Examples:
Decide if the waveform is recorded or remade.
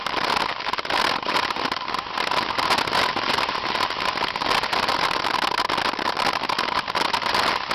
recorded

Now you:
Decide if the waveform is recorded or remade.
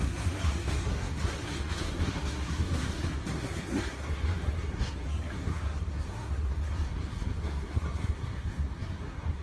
remade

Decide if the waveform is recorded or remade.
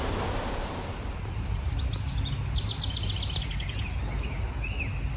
recorded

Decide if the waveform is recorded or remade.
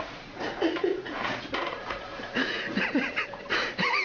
remade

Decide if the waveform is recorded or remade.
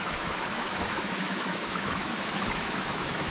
remade